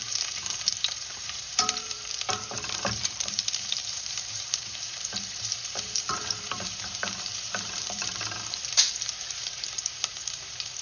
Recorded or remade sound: remade